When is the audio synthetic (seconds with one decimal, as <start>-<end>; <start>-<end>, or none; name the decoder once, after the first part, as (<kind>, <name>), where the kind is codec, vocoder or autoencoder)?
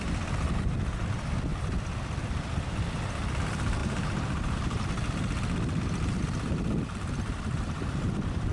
0.0-1.5 (vocoder, BigVGAN v2); 3.4-3.8; 6.0-8.5